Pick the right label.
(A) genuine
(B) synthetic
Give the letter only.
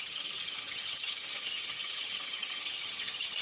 B